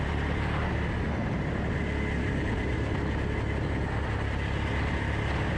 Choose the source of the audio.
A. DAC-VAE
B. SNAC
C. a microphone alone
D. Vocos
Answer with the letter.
C